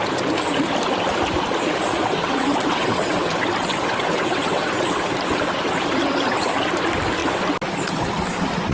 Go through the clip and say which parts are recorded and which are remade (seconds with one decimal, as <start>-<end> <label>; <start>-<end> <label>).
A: 0.0-2.0 recorded; 2.0-3.3 remade; 3.3-3.7 recorded; 3.7-4.7 remade; 4.7-8.7 recorded